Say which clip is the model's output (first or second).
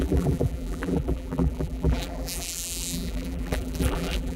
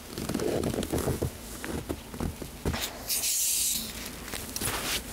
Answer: first